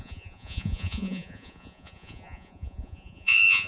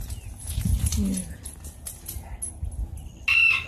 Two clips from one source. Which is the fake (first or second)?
first